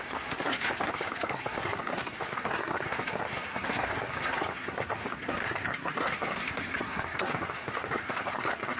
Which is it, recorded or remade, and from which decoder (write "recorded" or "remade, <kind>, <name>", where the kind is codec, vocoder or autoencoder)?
remade, codec, SNAC